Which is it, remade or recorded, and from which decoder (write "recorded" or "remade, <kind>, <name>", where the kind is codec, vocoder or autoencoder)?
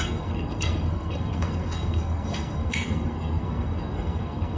remade, codec, SNAC